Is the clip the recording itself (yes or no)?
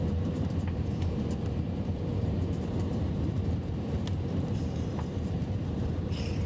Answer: no